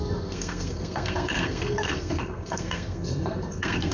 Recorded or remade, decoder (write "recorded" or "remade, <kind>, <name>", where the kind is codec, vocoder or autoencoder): remade, codec, SNAC